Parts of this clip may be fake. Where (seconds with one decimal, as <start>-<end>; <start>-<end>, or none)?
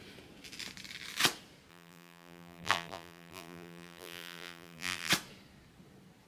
1.7-5.1